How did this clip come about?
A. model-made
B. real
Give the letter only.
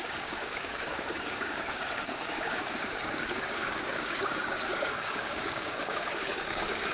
A